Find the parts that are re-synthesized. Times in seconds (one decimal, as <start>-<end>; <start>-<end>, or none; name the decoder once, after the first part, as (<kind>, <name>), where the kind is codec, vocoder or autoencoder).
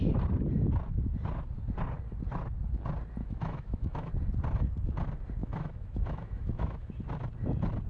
3.2-4.1 (autoencoder, DAC-VAE); 5.4-7.0